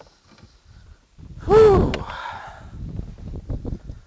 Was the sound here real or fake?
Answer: real